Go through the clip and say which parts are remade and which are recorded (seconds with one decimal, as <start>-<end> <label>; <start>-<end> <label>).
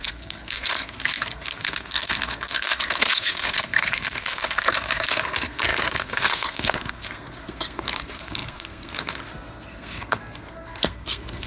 0.0-11.5 remade